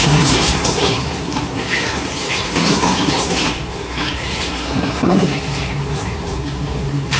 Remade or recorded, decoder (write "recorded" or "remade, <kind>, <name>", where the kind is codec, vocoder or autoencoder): remade, codec, SNAC